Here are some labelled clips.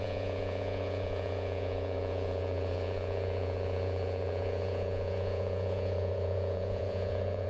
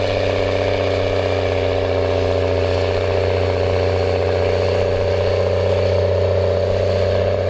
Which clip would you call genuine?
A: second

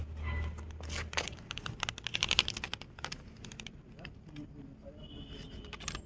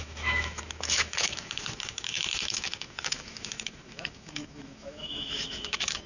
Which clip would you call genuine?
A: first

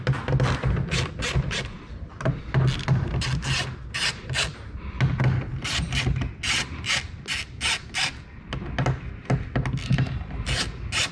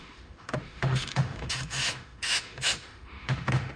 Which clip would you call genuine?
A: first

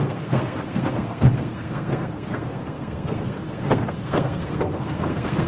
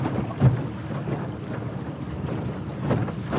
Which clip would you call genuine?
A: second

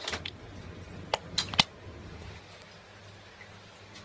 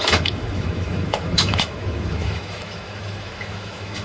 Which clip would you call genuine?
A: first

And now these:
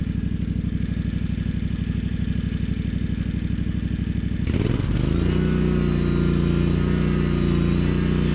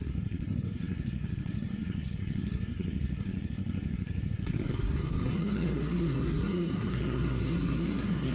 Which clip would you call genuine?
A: first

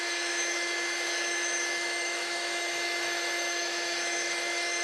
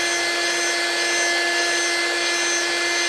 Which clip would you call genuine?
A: second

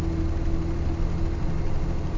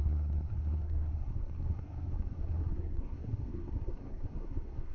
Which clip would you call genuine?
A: first